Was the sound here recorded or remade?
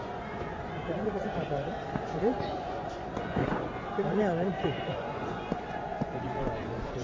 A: remade